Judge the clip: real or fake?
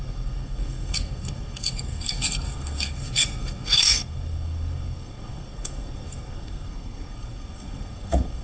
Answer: fake